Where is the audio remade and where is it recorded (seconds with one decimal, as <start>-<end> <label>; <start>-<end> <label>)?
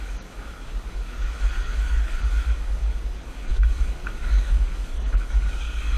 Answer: 0.0-6.0 remade